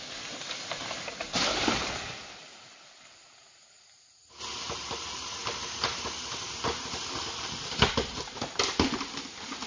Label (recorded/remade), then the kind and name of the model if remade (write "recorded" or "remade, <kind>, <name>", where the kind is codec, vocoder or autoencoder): recorded